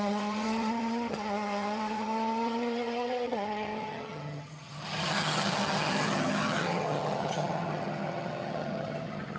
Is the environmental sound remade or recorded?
remade